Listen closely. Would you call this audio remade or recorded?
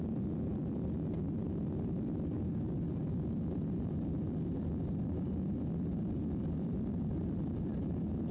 recorded